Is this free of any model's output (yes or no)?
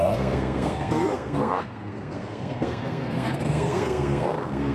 no